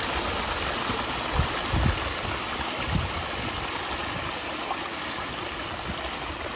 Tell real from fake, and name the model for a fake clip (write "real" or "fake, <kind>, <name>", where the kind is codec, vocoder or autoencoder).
real